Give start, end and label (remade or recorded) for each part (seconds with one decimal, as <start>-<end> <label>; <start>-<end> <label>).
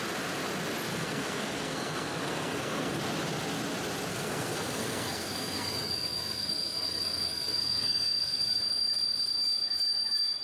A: 0.0-0.9 recorded; 0.9-3.0 remade; 3.0-4.1 recorded; 4.1-8.6 remade; 8.6-10.4 recorded